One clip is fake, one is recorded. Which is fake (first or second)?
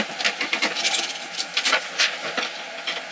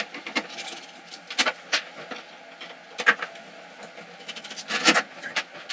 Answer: first